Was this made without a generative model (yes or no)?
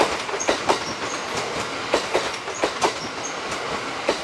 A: yes